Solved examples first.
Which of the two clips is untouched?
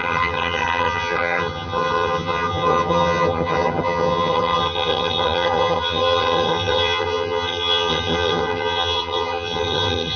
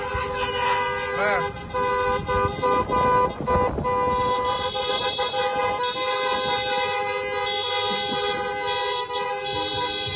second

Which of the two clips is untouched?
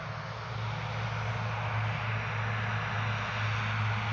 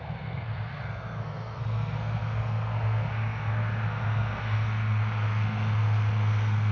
first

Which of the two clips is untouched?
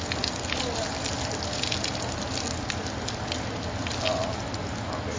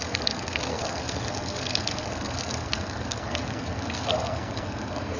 first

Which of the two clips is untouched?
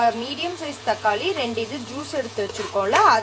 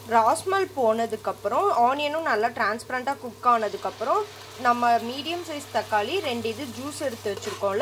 second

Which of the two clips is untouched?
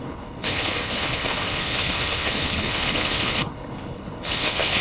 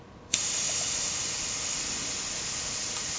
second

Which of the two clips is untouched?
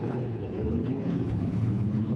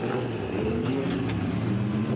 second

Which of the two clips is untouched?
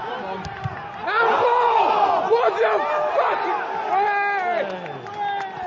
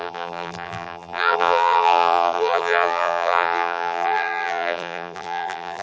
first